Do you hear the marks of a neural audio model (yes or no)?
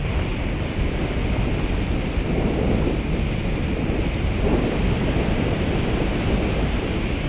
no